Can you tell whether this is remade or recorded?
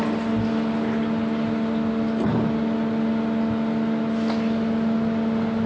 recorded